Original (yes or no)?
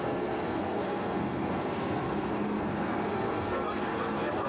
no